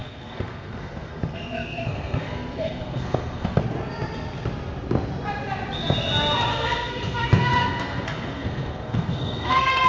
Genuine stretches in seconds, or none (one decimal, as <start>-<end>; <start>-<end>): 3.6-6.5